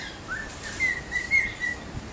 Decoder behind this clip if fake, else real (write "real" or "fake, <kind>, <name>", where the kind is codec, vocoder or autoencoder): real